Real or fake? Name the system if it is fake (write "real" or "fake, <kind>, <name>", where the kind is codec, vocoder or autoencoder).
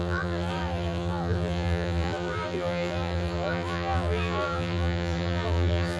fake, vocoder, BigVGAN v2